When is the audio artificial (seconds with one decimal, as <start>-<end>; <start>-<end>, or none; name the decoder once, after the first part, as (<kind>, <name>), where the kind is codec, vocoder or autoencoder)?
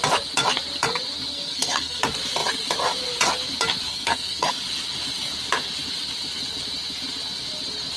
1.3-2.0 (codec, SNAC); 3.9-4.5